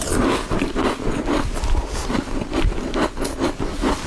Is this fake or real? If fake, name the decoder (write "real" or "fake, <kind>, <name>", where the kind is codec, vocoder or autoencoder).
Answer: real